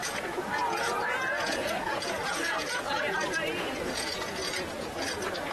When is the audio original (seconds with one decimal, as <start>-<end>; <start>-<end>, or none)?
none